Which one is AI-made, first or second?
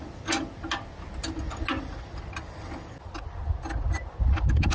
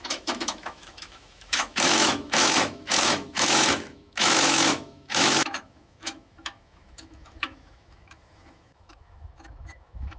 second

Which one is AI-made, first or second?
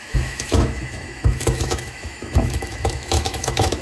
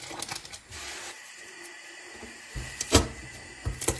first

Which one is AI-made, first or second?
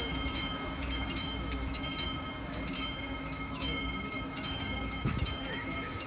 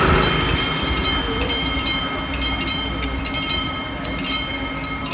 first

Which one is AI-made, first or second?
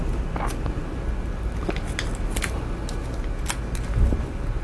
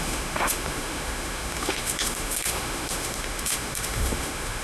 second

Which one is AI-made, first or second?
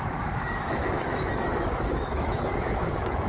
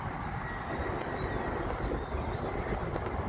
first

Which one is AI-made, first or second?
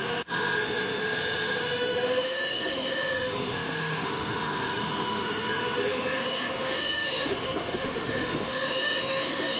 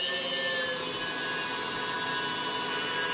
first